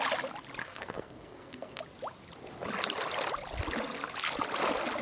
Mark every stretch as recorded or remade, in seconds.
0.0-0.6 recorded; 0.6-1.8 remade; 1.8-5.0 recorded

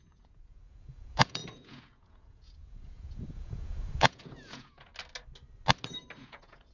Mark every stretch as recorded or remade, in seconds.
0.0-4.9 remade; 4.9-6.2 recorded; 6.2-6.7 remade

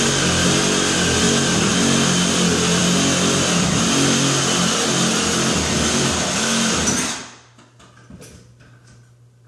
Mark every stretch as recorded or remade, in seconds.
0.0-9.5 recorded

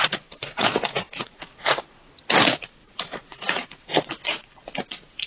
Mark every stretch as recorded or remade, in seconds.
0.0-2.1 remade; 2.1-2.6 recorded; 2.6-5.3 remade

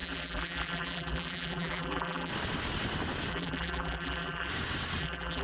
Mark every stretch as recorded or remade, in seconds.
0.0-2.3 remade; 2.3-3.3 recorded; 3.3-4.5 remade; 4.5-5.0 recorded; 5.0-5.4 remade

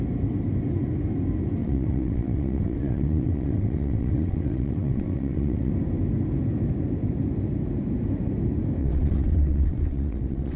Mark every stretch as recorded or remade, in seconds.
0.0-1.6 recorded; 1.6-5.7 remade; 5.7-8.8 recorded; 8.8-10.6 remade